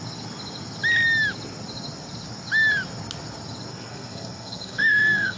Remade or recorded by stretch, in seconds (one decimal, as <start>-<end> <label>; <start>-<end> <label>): 0.0-3.7 recorded; 3.7-5.4 remade